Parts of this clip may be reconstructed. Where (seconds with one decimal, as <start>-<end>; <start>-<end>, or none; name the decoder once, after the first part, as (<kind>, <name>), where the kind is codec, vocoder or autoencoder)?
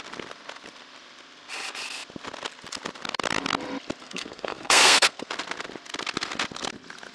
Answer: 4.0-5.3 (codec, SNAC)